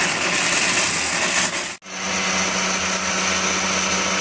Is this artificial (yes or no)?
no